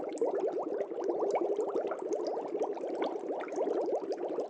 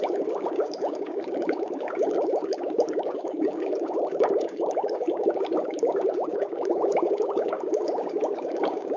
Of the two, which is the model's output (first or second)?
second